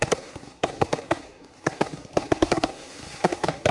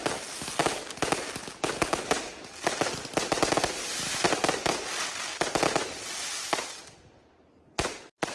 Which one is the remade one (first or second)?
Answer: first